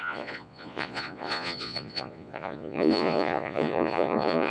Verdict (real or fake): fake